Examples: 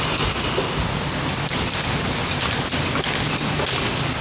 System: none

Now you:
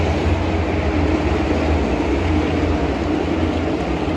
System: none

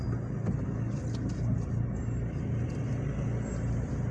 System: none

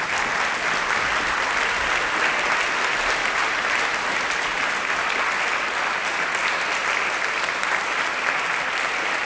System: none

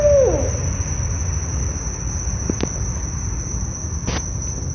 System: none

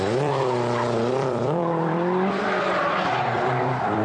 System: vocoder, BigVGAN v2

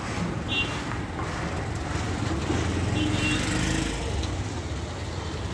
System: none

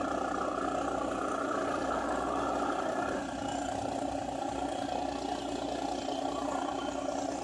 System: none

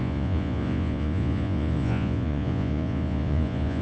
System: vocoder, Vocos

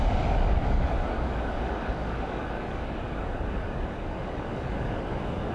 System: codec, DAC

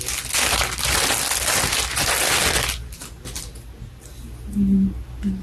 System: none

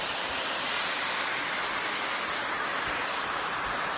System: none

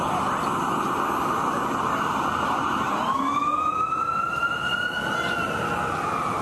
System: none